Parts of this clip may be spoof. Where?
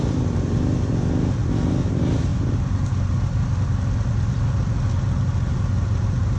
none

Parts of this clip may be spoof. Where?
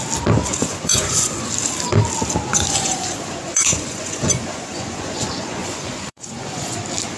0.4-1.5 (vocoder, Vocos); 2.5-6.8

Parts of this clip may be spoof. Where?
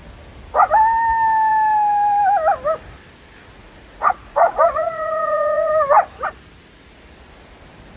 3.6-5.7 (vocoder, Vocos)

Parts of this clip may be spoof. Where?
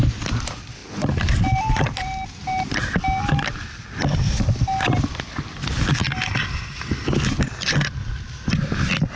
none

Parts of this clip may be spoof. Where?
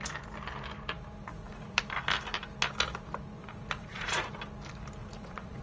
1.3-1.8 (vocoder, Vocos); 3.4-4.3; 5.0-5.6